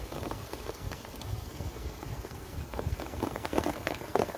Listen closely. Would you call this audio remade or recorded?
remade